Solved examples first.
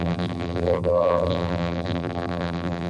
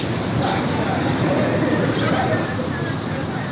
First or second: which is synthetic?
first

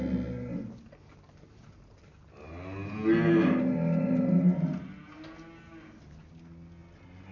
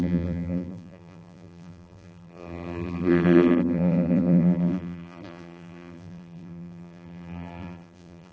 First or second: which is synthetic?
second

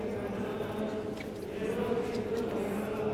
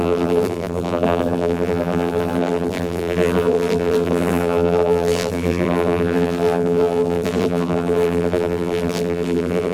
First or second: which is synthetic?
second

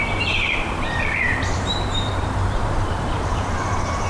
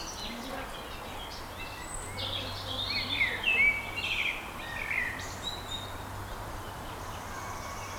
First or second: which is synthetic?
first